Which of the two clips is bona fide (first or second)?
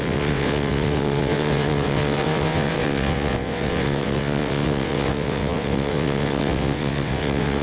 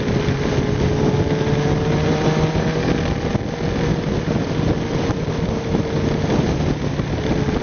second